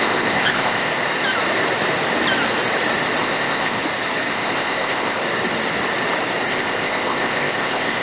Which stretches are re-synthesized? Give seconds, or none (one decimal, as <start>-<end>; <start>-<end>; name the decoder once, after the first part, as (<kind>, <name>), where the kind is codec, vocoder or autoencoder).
0.0-0.9 (codec, ZipCodec); 3.2-3.8; 4.3-5.2; 6.5-8.0